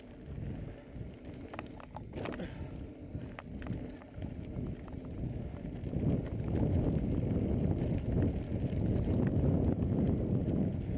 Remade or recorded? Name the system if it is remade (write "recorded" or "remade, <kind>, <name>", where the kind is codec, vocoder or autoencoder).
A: recorded